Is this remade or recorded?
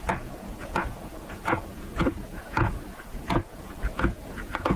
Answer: remade